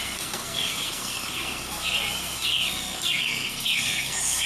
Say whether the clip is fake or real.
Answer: fake